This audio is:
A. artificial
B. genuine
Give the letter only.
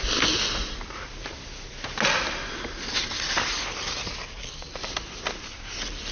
B